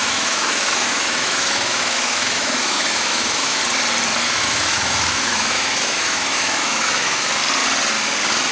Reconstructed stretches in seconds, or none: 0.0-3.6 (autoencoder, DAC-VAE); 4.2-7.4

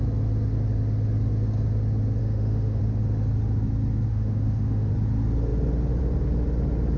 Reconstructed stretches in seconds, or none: 2.2-2.8 (autoencoder, DAC-VAE); 4.1-4.9

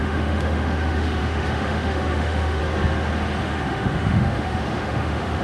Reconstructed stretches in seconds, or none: 0.0-2.6 (autoencoder, DAC-VAE); 3.4-5.4

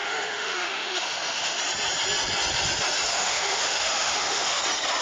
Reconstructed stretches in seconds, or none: 0.0-1.6 (autoencoder, DAC-VAE); 3.1-4.6

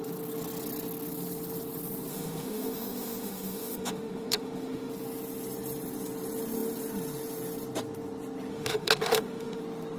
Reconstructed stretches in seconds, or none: 2.1-4.9 (autoencoder, DAC-VAE); 8.5-9.6

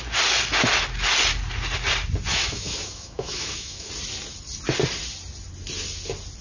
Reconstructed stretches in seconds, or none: 2.3-3.9 (autoencoder, DAC-VAE)

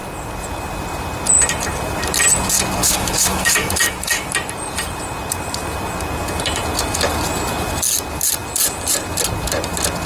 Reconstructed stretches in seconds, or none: 2.8-4.3 (autoencoder, DAC-VAE)